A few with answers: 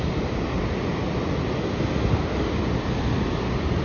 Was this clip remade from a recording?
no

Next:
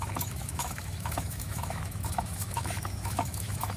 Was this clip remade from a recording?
yes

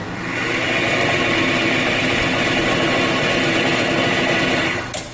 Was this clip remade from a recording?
no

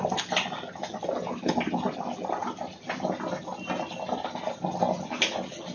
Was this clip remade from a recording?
no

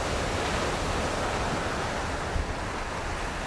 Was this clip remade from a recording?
no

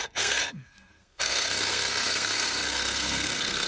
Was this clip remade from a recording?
yes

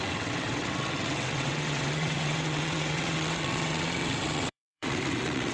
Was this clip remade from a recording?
yes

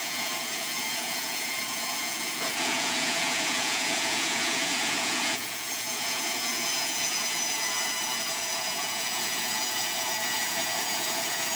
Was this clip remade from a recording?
yes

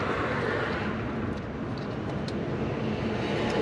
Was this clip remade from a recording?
no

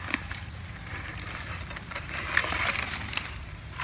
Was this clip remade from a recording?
yes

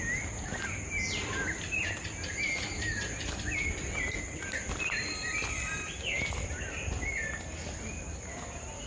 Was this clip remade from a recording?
no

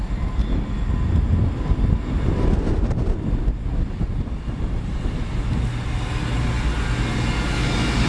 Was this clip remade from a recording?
no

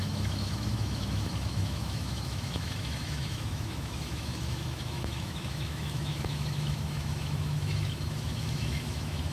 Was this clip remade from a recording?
yes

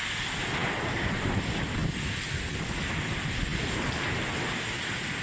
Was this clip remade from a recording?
no